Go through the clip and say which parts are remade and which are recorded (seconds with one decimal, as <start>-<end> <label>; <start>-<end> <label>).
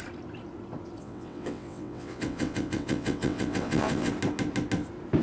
0.0-1.0 recorded; 1.0-4.1 remade; 4.1-5.2 recorded